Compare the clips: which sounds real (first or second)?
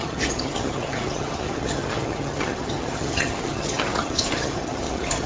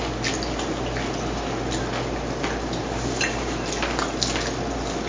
second